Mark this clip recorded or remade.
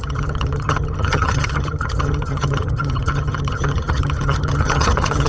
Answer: remade